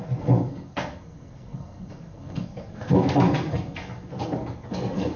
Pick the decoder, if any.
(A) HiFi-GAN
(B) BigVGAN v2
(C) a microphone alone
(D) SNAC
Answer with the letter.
D